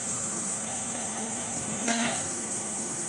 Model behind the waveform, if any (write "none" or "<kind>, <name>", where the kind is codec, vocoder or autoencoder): codec, SNAC